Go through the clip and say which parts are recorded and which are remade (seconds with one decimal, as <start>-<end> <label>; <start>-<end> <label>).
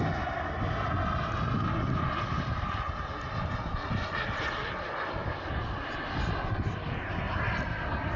0.0-8.2 recorded